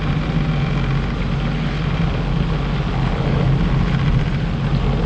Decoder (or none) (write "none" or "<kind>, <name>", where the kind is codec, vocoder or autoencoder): none